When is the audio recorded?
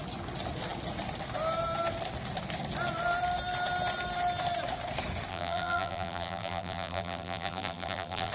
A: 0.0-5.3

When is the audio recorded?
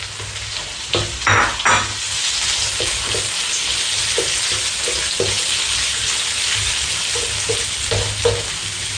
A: 0.0-4.0; 5.1-9.0